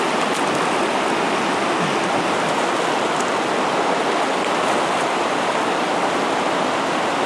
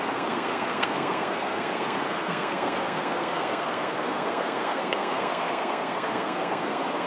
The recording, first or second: first